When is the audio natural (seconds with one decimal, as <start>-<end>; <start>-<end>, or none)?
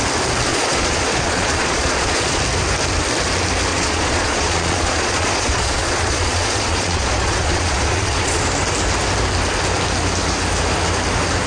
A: 0.0-0.5; 2.4-3.7; 8.4-11.5